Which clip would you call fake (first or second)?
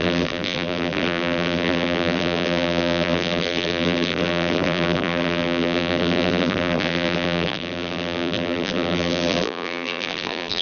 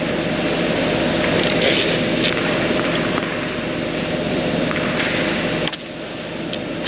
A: first